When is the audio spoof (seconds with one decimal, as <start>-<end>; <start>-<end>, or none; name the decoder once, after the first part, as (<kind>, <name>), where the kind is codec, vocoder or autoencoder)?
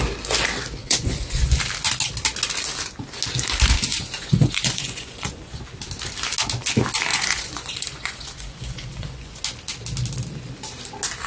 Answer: 0.8-1.6 (vocoder, Vocos); 3.9-5.6; 7.1-9.4